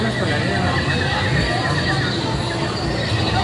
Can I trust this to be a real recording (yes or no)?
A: yes